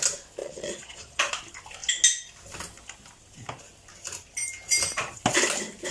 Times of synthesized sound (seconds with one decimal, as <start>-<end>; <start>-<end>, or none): 0.4-1.3